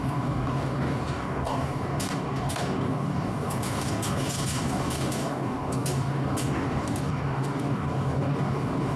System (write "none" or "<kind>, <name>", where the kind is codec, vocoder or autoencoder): codec, DAC